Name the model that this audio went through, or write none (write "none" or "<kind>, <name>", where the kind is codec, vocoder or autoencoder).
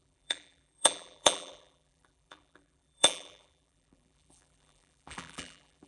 vocoder, BigVGAN v2